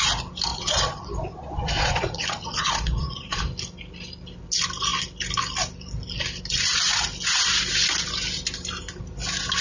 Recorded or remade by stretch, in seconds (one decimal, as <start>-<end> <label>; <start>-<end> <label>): 0.0-0.5 recorded; 0.5-3.4 remade; 3.4-9.6 recorded